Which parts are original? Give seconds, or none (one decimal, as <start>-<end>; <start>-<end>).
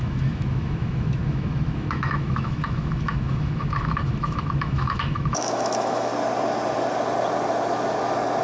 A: 6.1-8.4